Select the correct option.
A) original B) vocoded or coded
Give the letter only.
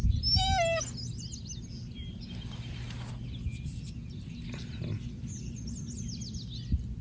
A